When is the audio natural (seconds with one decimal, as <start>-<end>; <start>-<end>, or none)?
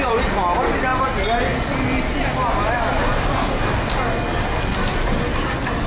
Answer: 0.0-4.9